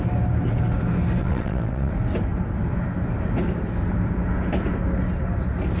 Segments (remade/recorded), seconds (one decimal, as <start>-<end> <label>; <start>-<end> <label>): 0.0-1.2 recorded; 1.2-1.9 remade; 1.9-5.8 recorded